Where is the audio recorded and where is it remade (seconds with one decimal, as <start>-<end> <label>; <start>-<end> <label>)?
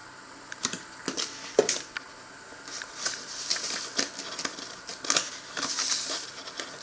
0.0-6.8 recorded